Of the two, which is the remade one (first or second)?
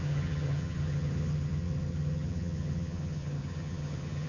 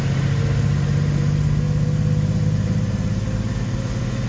first